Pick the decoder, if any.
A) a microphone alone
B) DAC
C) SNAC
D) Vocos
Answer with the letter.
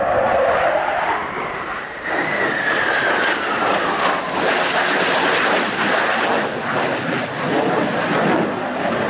A